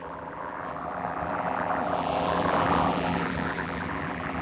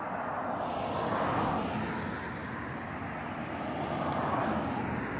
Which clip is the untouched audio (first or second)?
second